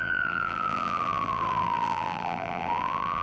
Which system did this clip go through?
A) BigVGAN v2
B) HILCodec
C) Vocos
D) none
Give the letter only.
A